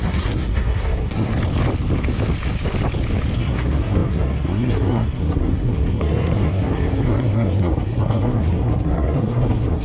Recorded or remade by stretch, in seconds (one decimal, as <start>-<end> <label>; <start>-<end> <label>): 0.0-1.3 remade; 1.3-3.4 recorded; 3.4-9.8 remade